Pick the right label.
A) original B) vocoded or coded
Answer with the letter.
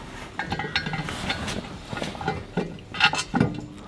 A